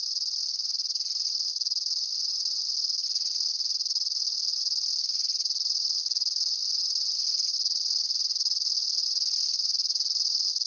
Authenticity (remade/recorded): recorded